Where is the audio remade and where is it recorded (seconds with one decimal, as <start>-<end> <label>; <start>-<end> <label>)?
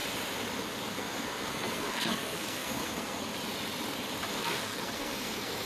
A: 0.0-0.9 recorded; 0.9-3.3 remade; 3.3-4.4 recorded; 4.4-5.7 remade